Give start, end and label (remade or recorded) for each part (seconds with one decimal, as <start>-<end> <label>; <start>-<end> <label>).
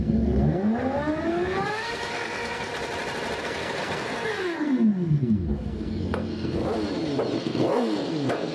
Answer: 0.0-2.7 remade; 2.7-3.4 recorded; 3.4-6.6 remade; 6.6-7.4 recorded; 7.4-8.5 remade